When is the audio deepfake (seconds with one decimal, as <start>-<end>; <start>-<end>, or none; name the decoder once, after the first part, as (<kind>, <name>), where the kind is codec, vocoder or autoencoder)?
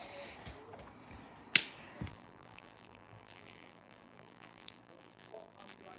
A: 2.1-6.0 (vocoder, BigVGAN v2)